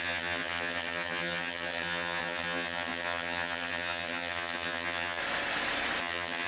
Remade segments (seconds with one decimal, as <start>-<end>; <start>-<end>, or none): 0.0-5.2; 6.0-6.5